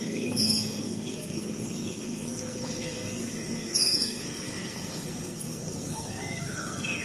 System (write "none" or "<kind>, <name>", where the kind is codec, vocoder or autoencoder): codec, SNAC